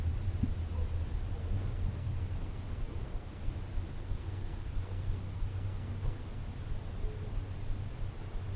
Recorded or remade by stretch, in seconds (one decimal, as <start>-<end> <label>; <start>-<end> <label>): 0.0-1.4 recorded; 1.4-3.5 remade; 3.5-3.9 recorded; 3.9-6.4 remade; 6.4-8.6 recorded